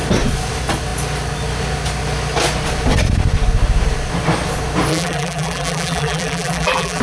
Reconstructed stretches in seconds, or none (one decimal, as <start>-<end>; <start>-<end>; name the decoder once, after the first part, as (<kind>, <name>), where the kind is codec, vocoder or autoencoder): 4.9-7.0 (vocoder, BigVGAN v2)